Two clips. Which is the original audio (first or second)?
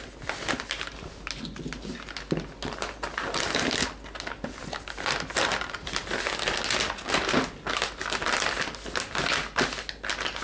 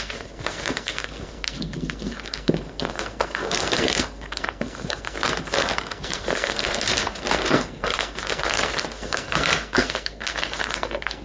first